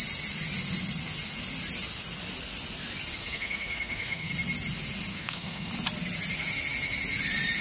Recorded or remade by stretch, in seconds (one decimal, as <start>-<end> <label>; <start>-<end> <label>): 0.0-3.2 recorded; 3.2-4.3 remade; 4.3-5.1 recorded; 5.1-5.7 remade; 5.7-7.6 recorded